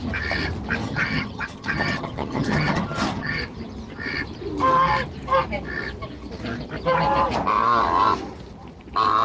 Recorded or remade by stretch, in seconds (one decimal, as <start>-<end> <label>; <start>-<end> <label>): 0.0-0.8 recorded; 0.8-3.4 remade; 3.4-9.2 recorded